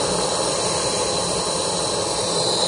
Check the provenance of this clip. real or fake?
real